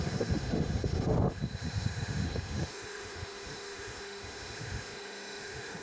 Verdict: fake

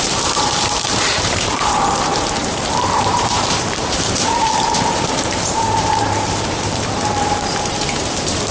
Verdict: fake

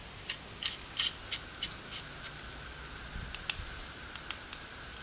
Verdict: real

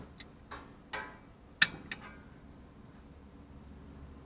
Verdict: real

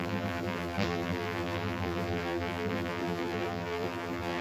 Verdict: fake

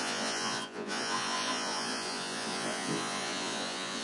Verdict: fake